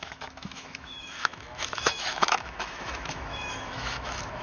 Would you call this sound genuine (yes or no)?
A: no